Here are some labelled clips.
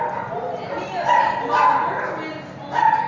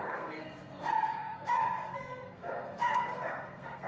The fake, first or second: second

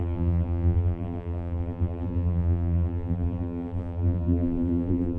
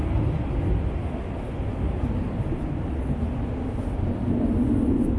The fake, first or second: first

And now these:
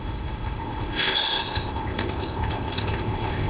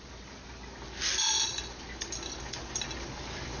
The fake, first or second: first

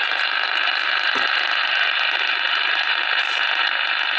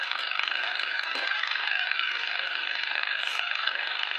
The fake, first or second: second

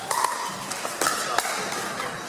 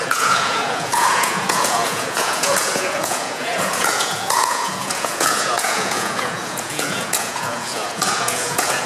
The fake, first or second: second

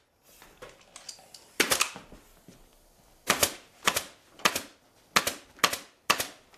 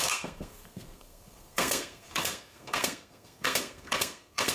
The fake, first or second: second